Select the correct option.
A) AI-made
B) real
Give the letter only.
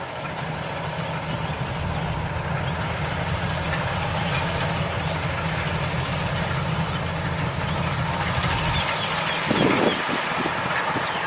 B